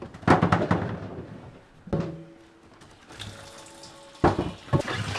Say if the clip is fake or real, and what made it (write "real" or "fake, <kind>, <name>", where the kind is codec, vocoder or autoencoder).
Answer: real